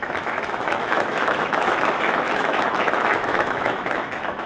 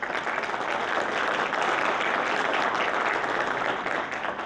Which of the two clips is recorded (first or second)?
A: second